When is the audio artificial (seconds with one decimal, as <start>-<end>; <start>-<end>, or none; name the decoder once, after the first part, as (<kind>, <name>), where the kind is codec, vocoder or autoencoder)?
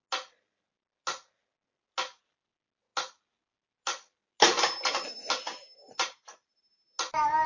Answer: none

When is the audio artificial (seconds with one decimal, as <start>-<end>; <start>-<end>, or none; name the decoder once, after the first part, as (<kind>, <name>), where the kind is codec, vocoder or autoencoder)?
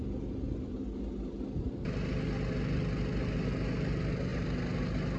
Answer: none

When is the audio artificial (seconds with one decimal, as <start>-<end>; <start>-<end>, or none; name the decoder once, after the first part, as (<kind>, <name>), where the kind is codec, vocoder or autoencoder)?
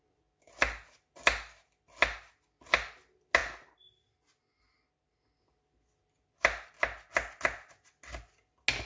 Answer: none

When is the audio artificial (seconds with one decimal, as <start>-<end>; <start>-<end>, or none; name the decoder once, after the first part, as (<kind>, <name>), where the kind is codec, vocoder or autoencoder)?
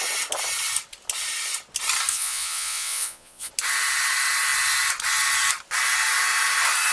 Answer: 2.1-3.5 (vocoder, Vocos)